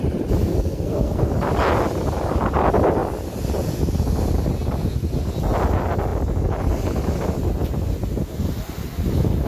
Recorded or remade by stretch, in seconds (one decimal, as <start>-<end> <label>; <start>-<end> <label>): 0.0-0.5 recorded; 0.5-1.3 remade; 1.3-9.5 recorded